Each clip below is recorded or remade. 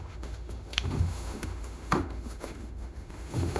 remade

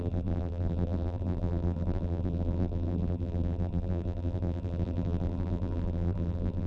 remade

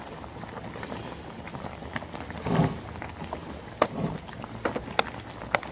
recorded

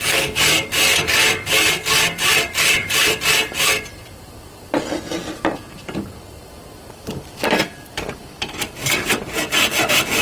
remade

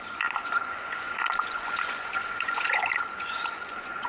remade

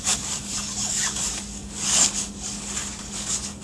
remade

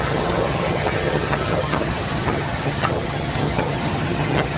remade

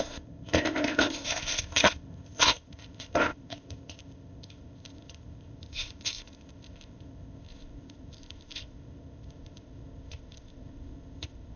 remade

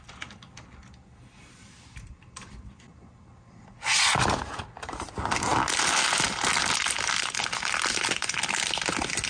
recorded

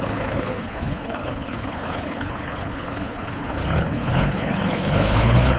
remade